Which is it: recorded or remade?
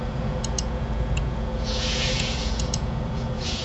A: remade